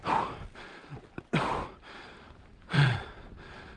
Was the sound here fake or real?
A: real